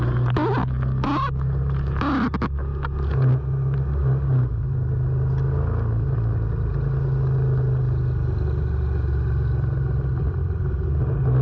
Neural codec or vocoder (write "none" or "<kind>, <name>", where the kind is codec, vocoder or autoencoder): none